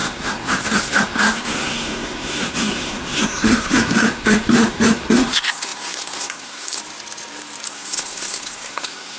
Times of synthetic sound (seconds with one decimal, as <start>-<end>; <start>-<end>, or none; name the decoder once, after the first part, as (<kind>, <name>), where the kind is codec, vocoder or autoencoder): 0.0-6.8 (codec, SNAC); 7.7-9.2